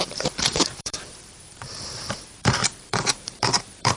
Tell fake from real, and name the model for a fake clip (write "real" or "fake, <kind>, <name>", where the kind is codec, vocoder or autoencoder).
fake, vocoder, BigVGAN v2